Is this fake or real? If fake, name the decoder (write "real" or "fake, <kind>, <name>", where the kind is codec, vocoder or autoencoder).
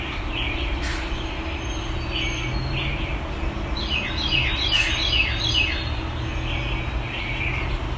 real